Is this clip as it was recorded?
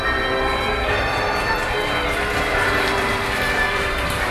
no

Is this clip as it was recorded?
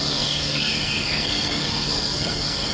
no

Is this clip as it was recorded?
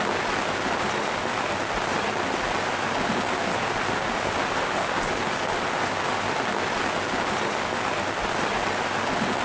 yes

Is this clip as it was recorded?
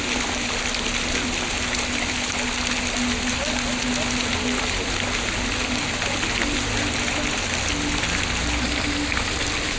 yes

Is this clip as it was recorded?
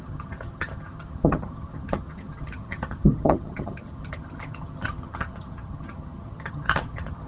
no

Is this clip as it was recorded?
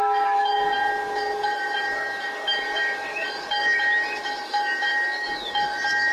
no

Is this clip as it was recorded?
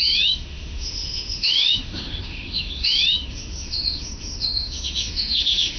no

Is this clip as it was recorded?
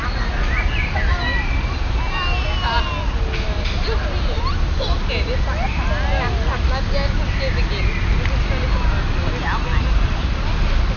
yes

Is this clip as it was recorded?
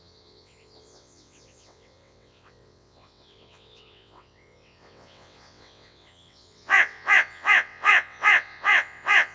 no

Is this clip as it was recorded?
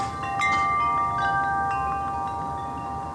yes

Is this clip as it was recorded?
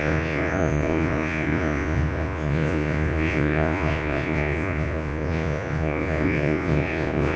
no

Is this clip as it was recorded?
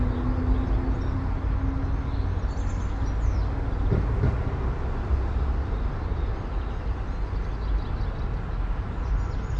yes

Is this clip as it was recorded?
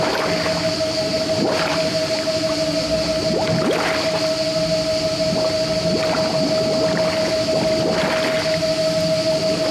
yes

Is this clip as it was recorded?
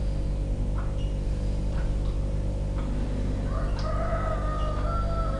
yes